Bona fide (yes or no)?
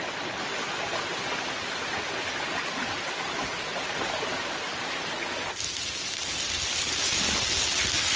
yes